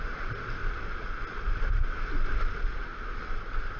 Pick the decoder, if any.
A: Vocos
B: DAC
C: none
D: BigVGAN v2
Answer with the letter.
C